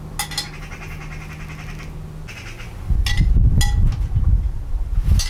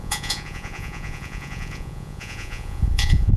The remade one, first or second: second